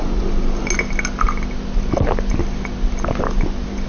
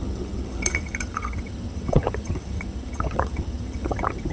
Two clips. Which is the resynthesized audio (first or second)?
second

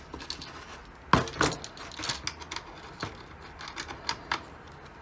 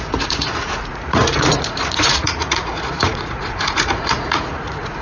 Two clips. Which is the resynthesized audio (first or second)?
second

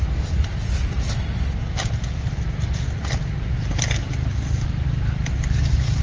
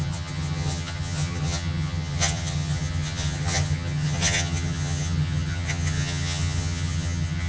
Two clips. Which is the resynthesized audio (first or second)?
second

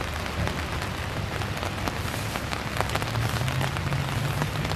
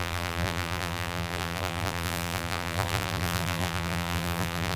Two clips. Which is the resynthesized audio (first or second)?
second